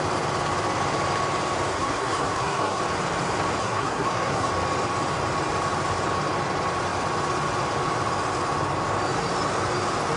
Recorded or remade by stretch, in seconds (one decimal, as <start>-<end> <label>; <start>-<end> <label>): 0.0-1.7 recorded; 1.7-2.8 remade; 2.8-3.6 recorded; 3.6-4.5 remade; 4.5-10.2 recorded